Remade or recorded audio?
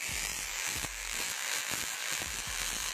remade